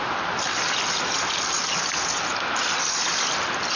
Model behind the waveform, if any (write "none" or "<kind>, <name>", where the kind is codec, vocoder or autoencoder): none